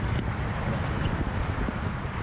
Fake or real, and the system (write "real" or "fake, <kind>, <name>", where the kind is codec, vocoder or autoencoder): real